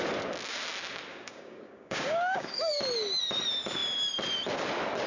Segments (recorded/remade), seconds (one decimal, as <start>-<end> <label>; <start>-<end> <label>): 0.0-1.1 recorded; 1.1-2.7 remade; 2.7-5.1 recorded